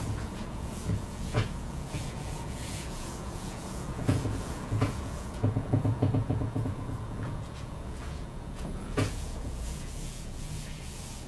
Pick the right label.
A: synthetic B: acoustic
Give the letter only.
A